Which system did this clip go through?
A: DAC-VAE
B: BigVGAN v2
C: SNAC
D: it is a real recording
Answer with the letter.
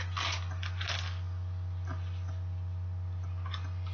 D